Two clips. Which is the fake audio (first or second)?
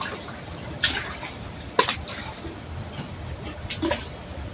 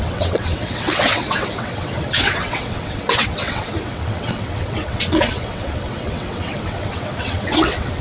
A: second